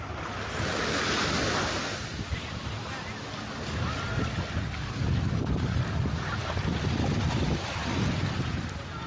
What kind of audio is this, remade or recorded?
recorded